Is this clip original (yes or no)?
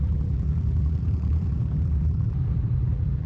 no